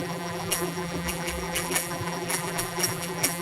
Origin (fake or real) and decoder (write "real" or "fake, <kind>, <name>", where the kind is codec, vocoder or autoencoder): fake, vocoder, BigVGAN v2